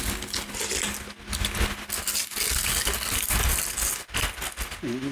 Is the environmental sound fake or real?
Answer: real